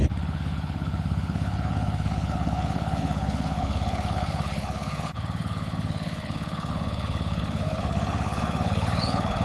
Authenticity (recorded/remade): remade